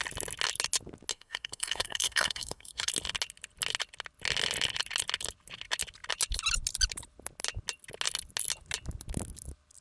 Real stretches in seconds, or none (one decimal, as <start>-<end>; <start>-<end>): 0.0-1.1; 2.9-9.8